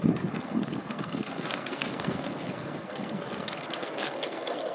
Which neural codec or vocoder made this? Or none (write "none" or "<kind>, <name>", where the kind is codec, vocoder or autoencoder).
codec, SNAC